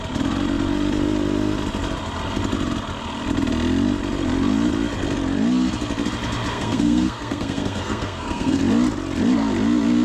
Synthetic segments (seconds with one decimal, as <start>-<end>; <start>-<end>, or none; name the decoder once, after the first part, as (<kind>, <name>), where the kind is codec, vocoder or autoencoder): 6.5-8.6 (codec, SNAC)